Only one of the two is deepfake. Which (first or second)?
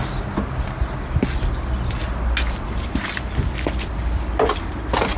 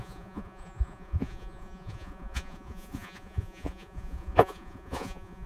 second